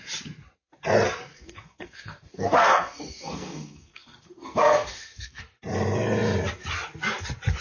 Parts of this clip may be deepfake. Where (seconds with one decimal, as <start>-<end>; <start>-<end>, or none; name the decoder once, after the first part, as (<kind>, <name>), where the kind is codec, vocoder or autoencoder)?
1.3-5.4 (codec, SNAC)